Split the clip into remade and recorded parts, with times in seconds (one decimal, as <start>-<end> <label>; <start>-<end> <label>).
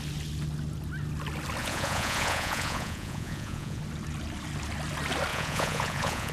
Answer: 0.0-1.6 recorded; 1.6-3.8 remade; 3.8-5.3 recorded; 5.3-6.3 remade